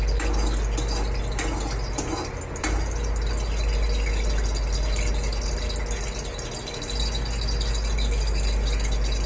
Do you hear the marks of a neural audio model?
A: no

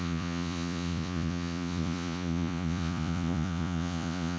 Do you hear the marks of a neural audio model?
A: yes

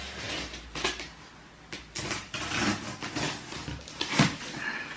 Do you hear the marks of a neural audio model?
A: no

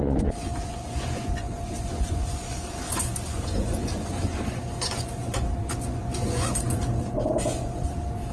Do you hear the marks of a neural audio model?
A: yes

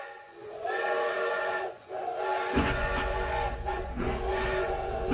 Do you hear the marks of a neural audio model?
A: yes